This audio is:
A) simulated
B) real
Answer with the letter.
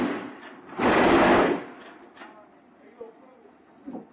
B